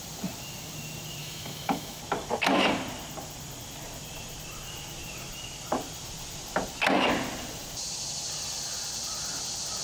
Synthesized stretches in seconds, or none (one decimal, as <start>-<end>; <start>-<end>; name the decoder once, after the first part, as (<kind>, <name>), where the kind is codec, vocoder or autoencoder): 1.2-2.0 (autoencoder, DAC-VAE)